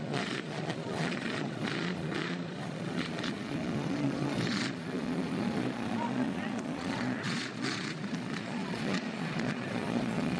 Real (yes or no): no